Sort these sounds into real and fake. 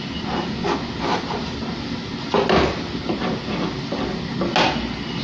real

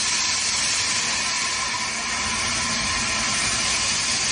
real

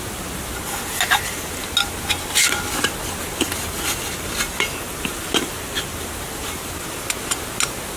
real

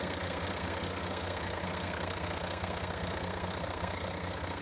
fake